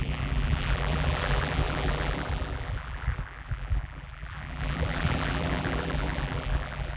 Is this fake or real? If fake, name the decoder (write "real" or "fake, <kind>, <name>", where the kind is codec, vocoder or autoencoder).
fake, vocoder, BigVGAN v2